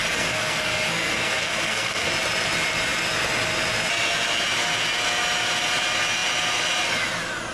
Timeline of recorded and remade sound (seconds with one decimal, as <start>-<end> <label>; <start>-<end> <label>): 0.0-2.1 remade; 2.1-7.5 recorded